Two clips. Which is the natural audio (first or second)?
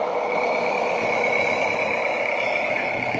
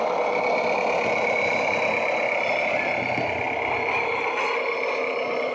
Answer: second